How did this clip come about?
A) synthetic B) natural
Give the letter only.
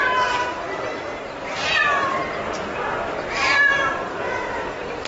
A